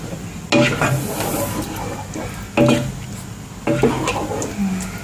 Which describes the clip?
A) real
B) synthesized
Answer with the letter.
A